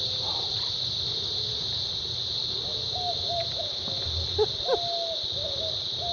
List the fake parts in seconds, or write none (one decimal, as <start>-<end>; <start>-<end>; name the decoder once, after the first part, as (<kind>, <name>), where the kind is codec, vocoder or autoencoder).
none